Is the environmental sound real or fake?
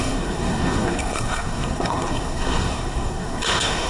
fake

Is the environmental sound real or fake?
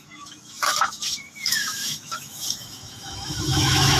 fake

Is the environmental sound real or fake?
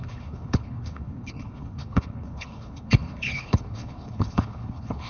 fake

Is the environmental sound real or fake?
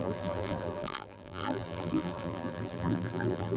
fake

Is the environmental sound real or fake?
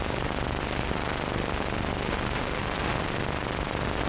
real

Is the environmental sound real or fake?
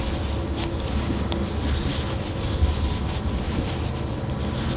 real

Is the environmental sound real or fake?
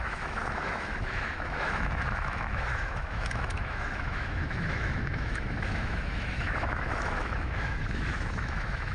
fake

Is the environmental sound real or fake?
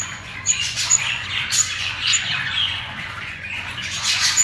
fake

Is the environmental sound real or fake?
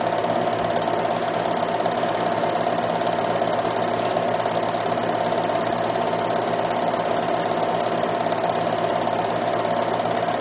real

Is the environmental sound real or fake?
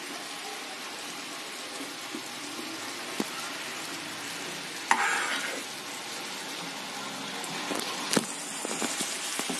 real